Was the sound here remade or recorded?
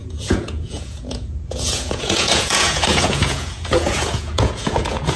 remade